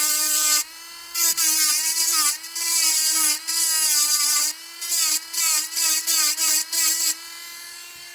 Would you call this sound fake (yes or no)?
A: yes